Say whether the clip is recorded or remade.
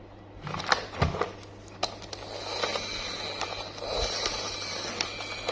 recorded